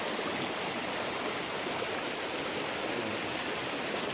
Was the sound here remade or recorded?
recorded